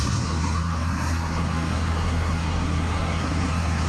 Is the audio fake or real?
fake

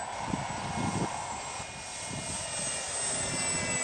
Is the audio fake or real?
real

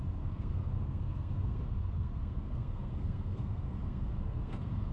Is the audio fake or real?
fake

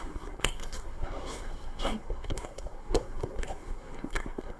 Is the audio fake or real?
fake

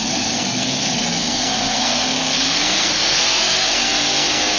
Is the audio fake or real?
fake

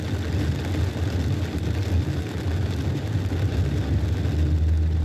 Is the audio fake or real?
real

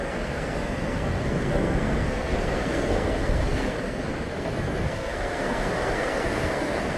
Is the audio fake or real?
fake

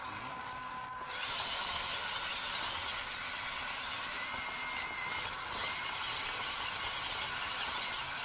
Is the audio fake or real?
real